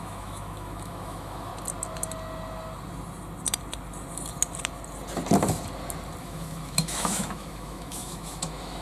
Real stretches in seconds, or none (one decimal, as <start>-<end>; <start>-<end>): 1.5-6.2